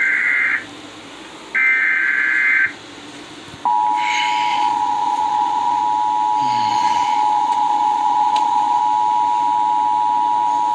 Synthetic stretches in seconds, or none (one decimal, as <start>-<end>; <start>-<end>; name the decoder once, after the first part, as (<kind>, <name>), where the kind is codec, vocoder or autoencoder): 4.5-5.8 (vocoder, Vocos); 6.7-8.8